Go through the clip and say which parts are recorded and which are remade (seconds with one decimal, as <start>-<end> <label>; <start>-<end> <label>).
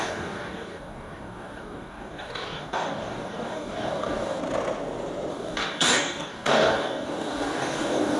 0.0-4.4 remade; 4.4-5.3 recorded; 5.3-8.2 remade